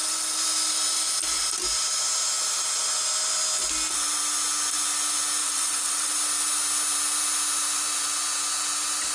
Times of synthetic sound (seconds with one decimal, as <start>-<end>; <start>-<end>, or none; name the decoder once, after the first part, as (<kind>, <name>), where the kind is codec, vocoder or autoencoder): 5.4-6.1 (vocoder, WaveNeXt)